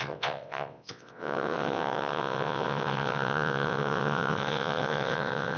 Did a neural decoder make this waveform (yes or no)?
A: yes